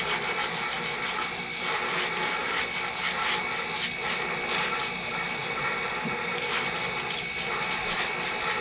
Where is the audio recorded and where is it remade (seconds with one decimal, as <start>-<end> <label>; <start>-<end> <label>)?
0.0-8.6 recorded